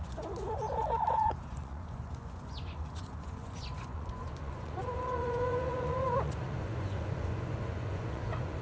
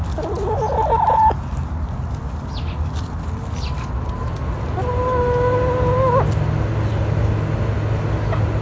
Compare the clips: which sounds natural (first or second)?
second